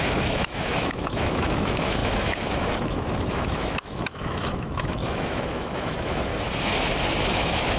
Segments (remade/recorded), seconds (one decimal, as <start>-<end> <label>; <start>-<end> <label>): 0.0-6.3 remade; 6.3-7.2 recorded; 7.2-7.8 remade